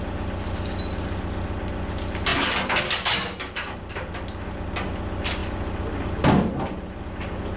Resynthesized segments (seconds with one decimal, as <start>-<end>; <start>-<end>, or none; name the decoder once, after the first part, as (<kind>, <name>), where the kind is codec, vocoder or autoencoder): none